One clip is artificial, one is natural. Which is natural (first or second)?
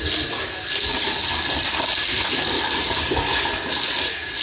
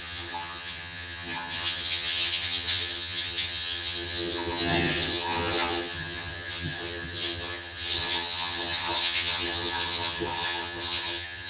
first